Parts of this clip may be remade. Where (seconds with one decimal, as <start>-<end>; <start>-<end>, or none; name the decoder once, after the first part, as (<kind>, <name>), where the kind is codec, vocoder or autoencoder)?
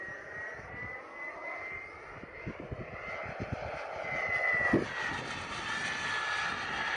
none